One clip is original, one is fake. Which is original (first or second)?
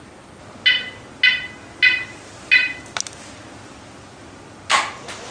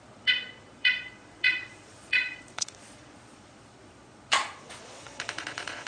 first